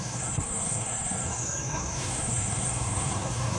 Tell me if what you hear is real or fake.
fake